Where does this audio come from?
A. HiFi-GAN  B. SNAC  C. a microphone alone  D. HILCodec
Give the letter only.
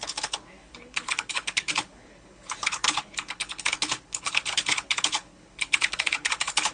D